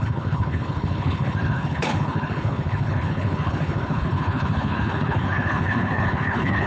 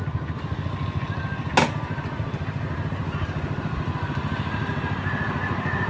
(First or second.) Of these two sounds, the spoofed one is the first